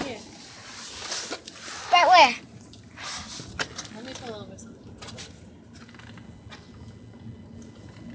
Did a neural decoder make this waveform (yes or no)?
no